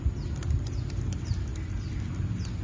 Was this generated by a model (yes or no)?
no